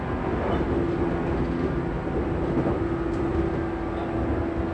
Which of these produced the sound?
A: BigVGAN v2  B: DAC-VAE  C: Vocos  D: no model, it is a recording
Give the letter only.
D